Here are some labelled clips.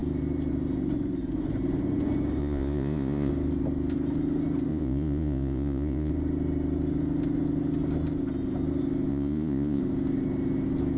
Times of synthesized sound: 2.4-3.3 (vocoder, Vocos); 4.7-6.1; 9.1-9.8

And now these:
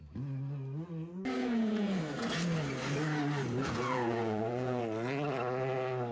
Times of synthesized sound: 1.4-2.0 (vocoder, Vocos); 3.6-4.8

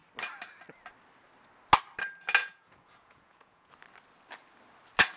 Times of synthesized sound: 2.4-3.7 (vocoder, Vocos)

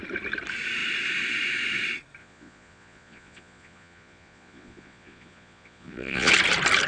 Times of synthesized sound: 2.2-6.3 (vocoder, Vocos)

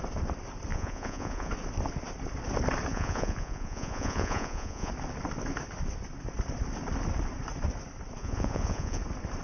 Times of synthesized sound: 0.7-1.5 (vocoder, Vocos); 2.9-4.9; 8.2-9.0